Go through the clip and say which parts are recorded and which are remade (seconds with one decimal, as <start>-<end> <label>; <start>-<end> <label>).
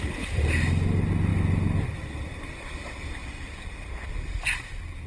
0.0-5.1 recorded